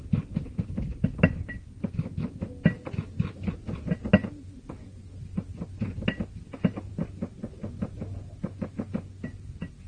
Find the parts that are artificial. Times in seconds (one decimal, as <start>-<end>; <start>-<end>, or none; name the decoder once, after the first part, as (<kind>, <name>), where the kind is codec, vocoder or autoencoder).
none